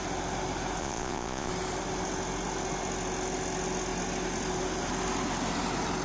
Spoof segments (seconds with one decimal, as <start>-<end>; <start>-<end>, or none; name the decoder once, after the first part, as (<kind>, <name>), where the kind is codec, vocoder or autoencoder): 0.8-1.5 (vocoder, Vocos)